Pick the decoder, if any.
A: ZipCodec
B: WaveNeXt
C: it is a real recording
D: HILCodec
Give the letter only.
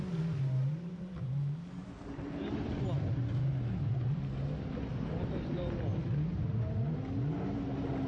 C